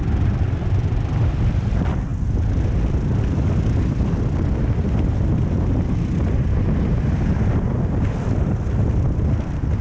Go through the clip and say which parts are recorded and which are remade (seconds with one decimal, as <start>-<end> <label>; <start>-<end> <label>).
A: 0.0-2.1 remade; 2.1-3.2 recorded; 3.2-9.8 remade